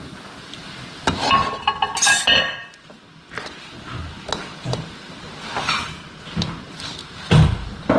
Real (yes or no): yes